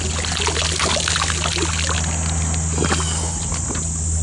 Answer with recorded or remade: recorded